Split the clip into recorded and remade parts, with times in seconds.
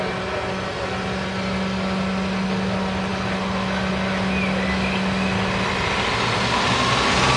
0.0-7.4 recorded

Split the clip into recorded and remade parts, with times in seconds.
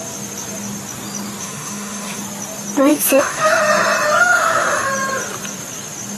0.0-1.4 recorded; 1.4-2.2 remade; 2.2-2.9 recorded; 2.9-3.6 remade; 3.6-4.2 recorded; 4.2-4.9 remade; 4.9-6.2 recorded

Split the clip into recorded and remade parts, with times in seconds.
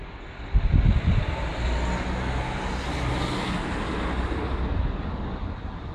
0.0-5.9 recorded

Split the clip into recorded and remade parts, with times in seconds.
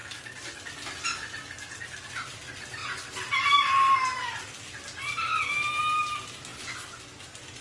0.0-7.6 recorded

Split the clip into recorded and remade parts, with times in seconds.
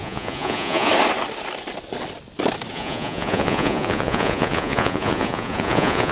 0.0-0.9 remade; 0.9-2.7 recorded; 2.7-6.1 remade